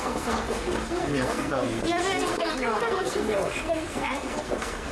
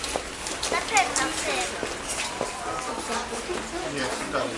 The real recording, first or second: second